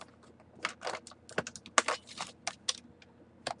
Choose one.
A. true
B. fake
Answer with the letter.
A